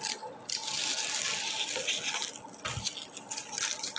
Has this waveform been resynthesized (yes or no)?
no